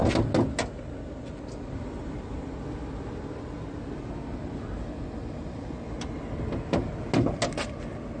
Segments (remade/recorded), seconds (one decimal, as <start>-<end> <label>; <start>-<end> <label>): 0.0-8.2 recorded